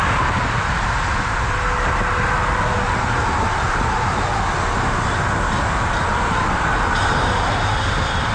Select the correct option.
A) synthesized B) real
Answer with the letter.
B